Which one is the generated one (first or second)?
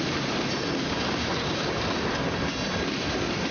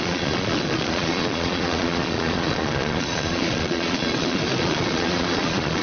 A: second